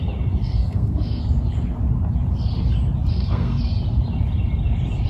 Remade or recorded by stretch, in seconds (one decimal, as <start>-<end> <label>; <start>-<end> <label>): 0.0-0.4 recorded; 0.4-1.2 remade; 1.2-3.1 recorded; 3.1-3.6 remade; 3.6-5.1 recorded